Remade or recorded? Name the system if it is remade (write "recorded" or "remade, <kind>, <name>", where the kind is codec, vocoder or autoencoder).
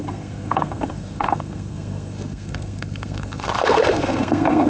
remade, codec, SNAC